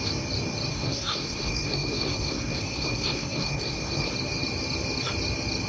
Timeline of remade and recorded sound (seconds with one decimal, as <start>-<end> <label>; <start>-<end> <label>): 0.0-0.7 recorded; 0.7-4.1 remade; 4.1-5.7 recorded